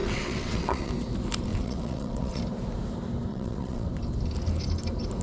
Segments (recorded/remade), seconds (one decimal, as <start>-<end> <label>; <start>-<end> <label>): 0.0-0.9 remade; 0.9-1.5 recorded; 1.5-2.4 remade; 2.4-3.3 recorded; 3.3-3.9 remade; 3.9-5.2 recorded